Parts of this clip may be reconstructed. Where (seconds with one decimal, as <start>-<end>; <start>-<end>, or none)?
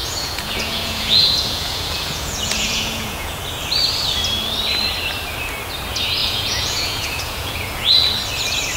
0.0-3.4; 6.2-7.9